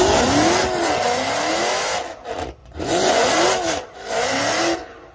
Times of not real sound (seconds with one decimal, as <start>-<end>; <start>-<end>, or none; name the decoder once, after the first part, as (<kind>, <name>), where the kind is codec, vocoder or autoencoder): 2.6-3.3 (vocoder, Vocos)